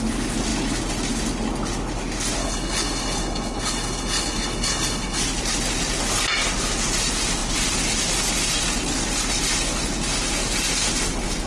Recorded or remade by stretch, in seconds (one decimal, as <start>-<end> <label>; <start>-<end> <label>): 0.0-2.4 recorded; 2.4-5.2 remade; 5.2-11.5 recorded